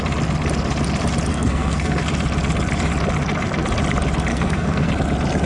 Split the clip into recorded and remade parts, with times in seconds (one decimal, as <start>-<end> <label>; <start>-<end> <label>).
0.0-1.3 recorded; 1.3-2.0 remade; 2.0-4.3 recorded; 4.3-4.9 remade; 4.9-5.5 recorded